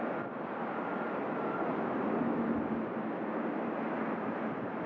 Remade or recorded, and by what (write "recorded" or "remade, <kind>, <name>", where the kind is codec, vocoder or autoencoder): recorded